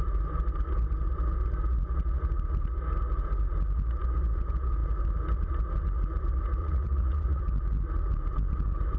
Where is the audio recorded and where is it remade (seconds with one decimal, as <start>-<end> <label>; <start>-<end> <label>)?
0.0-6.6 recorded; 6.6-7.4 remade; 7.4-9.0 recorded